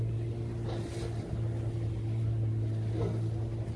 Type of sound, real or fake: real